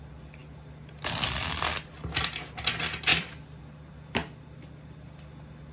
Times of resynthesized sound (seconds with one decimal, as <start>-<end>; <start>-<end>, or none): 3.1-3.6